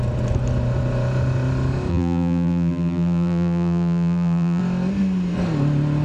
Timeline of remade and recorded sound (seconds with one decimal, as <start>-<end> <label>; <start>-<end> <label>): 0.0-1.9 recorded; 1.9-4.6 remade; 4.6-6.0 recorded